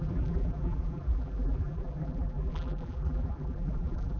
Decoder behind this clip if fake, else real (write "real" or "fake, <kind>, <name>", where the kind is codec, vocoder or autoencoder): fake, vocoder, BigVGAN v2